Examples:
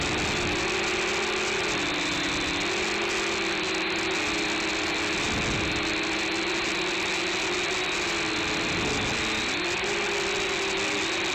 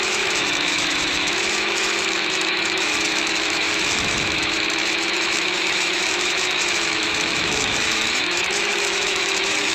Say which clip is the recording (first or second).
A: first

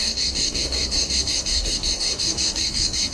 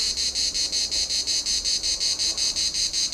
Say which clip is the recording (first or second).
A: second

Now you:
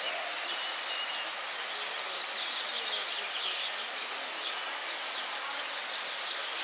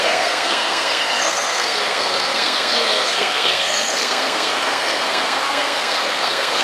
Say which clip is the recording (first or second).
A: first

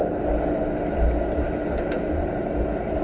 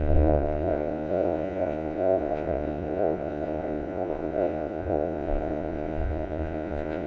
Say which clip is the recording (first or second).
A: first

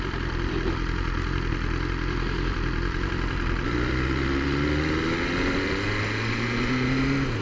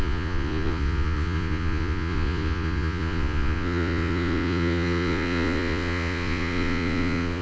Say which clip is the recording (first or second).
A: first